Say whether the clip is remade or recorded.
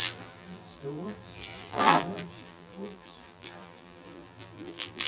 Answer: remade